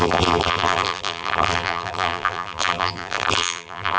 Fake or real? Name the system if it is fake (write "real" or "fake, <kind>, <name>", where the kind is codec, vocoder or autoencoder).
fake, vocoder, BigVGAN v2